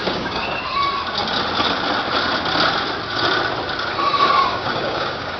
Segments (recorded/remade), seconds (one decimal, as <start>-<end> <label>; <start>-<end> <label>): 0.0-0.6 remade; 0.6-4.1 recorded; 4.1-5.4 remade